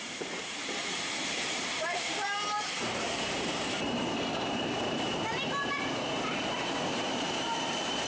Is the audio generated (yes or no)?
yes